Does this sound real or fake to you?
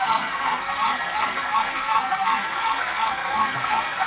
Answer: fake